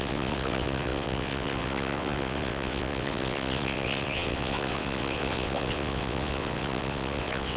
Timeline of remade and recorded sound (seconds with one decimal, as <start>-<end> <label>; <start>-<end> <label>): 0.0-7.6 remade